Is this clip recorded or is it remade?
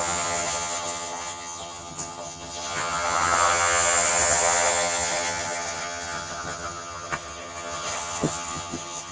remade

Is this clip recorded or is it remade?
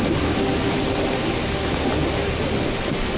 recorded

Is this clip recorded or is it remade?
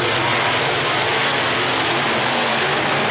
recorded